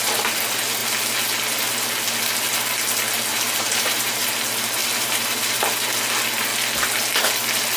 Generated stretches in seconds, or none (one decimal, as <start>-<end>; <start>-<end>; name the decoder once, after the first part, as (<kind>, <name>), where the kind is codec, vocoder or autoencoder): 3.3-4.3 (vocoder, BigVGAN v2); 4.8-5.4